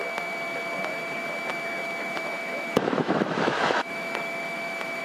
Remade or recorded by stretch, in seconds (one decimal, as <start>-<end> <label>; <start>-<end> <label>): 0.0-2.0 recorded; 2.0-5.0 remade